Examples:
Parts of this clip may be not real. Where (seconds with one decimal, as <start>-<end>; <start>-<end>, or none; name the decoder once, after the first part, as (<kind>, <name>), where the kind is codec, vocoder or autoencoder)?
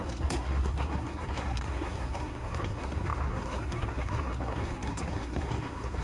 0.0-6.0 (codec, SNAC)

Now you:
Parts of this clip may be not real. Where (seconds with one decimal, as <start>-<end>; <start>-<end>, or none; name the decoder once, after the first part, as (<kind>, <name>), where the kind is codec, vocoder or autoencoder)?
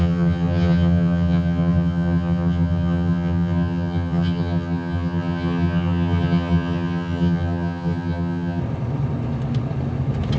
0.0-8.6 (vocoder, HiFi-GAN)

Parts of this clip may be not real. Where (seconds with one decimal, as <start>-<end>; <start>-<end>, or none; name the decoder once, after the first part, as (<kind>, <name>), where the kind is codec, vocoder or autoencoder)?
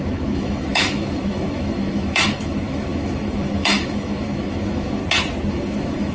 0.0-5.0 (autoencoder, DAC-VAE); 5.5-6.1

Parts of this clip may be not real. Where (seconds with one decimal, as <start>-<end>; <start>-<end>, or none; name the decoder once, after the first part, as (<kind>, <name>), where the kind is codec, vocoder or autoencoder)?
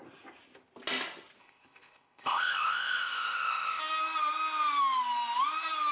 1.4-3.8 (codec, ZipCodec)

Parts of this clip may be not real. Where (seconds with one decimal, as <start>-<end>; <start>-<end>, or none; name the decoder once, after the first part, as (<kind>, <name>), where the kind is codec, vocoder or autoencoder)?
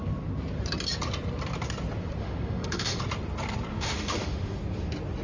2.2-3.0 (autoencoder, DAC-VAE); 3.7-4.6